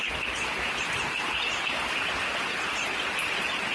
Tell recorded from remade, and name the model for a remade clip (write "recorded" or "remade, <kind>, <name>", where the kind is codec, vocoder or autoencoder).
recorded